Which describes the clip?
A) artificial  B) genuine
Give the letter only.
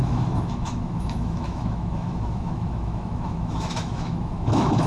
A